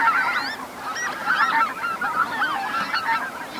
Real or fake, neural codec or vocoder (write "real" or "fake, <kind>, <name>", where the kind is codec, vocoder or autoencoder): real